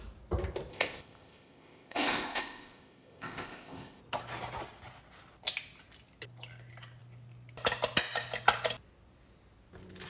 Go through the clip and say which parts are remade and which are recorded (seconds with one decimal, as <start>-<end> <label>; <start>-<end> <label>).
0.0-0.7 recorded; 0.7-4.0 remade; 4.0-10.1 recorded